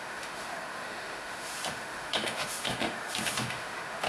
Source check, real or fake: fake